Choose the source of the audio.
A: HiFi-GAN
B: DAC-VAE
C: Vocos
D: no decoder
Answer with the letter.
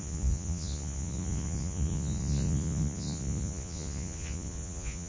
C